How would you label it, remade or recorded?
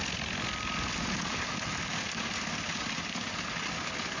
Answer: recorded